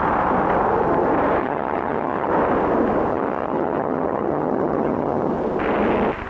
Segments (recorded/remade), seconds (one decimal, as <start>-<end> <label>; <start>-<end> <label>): 0.0-1.4 recorded; 1.4-2.3 remade; 2.3-3.1 recorded; 3.1-5.3 remade; 5.3-6.3 recorded